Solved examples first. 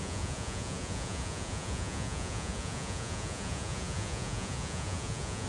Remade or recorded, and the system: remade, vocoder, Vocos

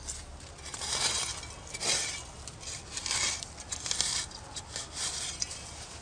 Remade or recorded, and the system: recorded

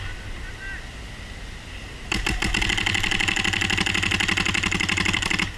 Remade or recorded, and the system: recorded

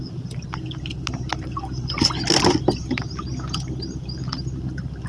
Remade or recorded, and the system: recorded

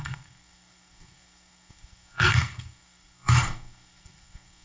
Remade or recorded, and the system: remade, codec, SNAC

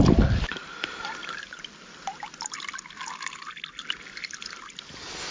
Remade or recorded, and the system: recorded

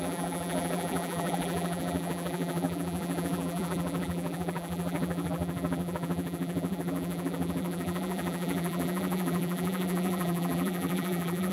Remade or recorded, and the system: remade, vocoder, BigVGAN v2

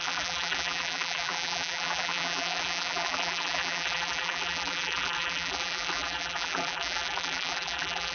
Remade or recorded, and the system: remade, vocoder, BigVGAN v2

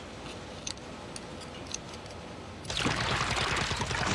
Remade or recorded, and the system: recorded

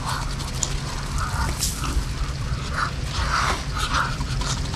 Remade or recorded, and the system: recorded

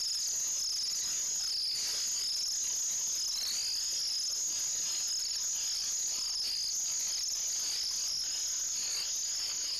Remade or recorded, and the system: recorded